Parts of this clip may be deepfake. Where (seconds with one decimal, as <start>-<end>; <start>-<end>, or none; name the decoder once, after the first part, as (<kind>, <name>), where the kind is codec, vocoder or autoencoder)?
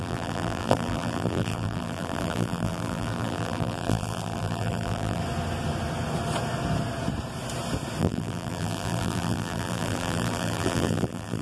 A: 0.0-5.2 (vocoder, BigVGAN v2); 8.0-11.4